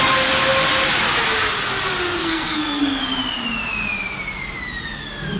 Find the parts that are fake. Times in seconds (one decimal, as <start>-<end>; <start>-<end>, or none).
2.2-3.0